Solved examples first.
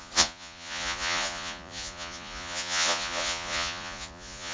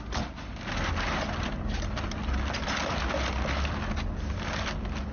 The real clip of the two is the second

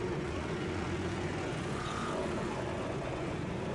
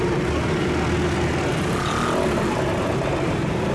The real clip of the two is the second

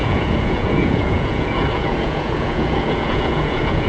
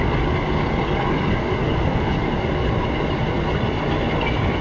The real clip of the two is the second